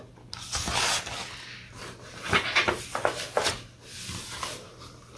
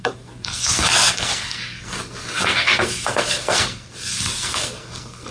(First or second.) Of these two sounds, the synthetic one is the second